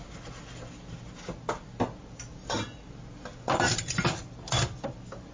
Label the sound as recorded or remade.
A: recorded